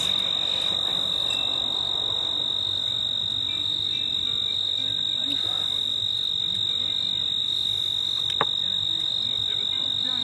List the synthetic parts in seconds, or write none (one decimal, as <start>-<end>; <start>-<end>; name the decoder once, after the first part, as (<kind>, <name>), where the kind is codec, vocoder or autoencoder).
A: none